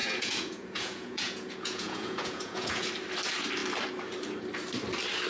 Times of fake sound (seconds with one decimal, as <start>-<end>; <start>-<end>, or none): 0.0-2.9